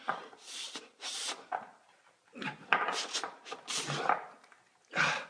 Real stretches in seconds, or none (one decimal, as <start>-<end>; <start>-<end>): 0.0-5.3